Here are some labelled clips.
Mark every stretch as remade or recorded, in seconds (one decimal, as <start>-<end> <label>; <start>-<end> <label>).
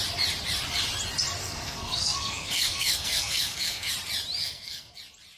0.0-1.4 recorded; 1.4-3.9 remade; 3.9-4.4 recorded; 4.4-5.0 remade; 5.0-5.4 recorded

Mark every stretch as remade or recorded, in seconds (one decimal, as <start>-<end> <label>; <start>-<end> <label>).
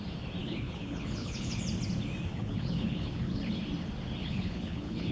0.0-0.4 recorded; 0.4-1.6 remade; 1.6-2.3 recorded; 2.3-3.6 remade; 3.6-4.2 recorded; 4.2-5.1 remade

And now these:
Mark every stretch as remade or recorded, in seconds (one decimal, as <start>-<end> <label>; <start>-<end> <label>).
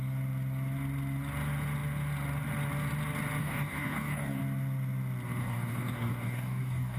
0.0-3.4 recorded; 3.4-4.4 remade; 4.4-5.4 recorded; 5.4-7.0 remade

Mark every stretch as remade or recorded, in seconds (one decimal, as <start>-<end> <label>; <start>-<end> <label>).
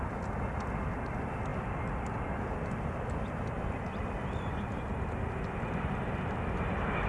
0.0-7.1 recorded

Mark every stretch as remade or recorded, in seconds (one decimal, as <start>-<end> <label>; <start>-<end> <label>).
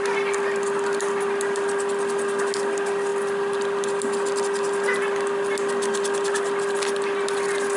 0.0-7.8 recorded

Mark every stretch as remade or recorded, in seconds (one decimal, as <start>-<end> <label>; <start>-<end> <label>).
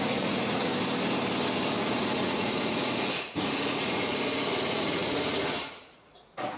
0.0-0.7 remade; 0.7-1.8 recorded; 1.8-6.6 remade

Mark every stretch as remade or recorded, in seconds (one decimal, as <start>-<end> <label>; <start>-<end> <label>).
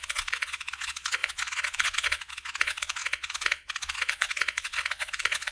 0.0-5.5 remade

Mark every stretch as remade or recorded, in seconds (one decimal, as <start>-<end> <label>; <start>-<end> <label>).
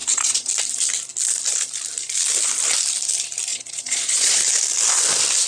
0.0-0.5 remade; 0.5-3.5 recorded; 3.5-4.4 remade; 4.4-5.5 recorded